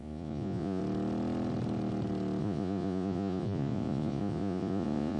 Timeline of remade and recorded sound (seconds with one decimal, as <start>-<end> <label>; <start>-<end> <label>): 0.0-0.8 remade; 0.8-2.4 recorded; 2.4-5.2 remade